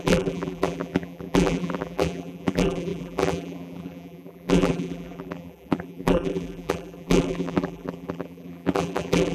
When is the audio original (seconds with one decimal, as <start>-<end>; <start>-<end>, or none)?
none